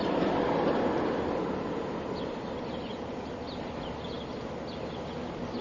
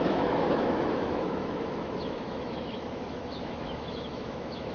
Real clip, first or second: first